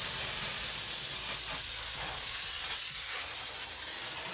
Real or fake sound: real